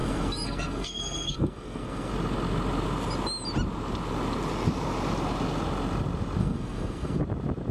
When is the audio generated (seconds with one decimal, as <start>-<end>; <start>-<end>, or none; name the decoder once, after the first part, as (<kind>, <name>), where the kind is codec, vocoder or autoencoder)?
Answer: 0.0-2.1 (codec, SNAC); 6.4-7.2